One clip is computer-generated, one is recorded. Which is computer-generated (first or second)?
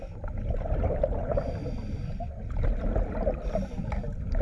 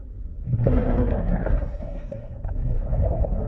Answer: second